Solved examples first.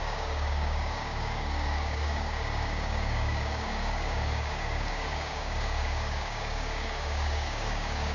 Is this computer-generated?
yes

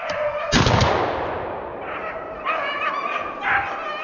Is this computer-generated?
no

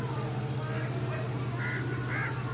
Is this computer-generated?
no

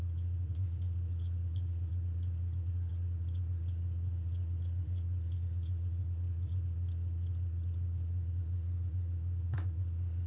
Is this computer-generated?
yes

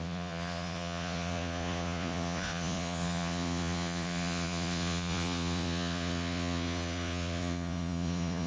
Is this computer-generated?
yes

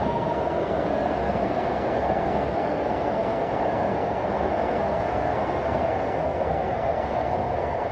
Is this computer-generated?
yes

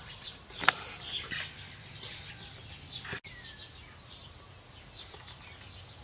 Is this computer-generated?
no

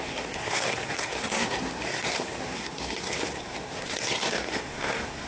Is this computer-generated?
yes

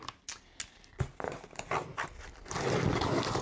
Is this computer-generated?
no